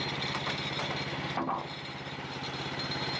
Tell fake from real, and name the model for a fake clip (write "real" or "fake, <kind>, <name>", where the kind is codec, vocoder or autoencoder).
real